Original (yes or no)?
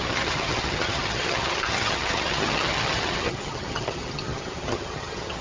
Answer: no